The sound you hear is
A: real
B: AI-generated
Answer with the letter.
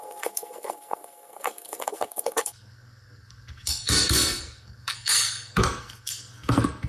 B